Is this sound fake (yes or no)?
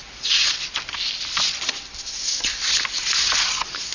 no